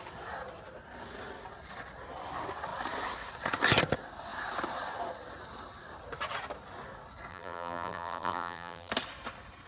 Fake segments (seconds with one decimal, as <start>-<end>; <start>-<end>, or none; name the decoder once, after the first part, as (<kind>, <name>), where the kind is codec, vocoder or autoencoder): 7.3-8.9 (vocoder, BigVGAN v2)